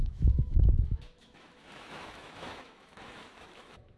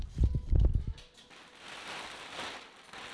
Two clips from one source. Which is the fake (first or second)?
first